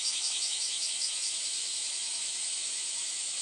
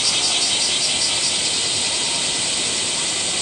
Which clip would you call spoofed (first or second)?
first